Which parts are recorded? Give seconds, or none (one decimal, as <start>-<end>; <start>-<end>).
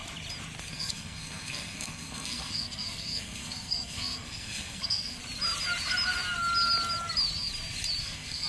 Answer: 0.0-0.7; 5.2-8.0